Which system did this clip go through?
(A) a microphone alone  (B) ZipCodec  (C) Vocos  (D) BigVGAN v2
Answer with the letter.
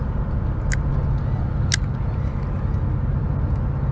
A